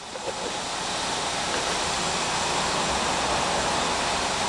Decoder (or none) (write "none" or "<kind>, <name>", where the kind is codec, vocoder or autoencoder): none